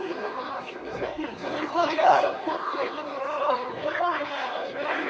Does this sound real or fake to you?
fake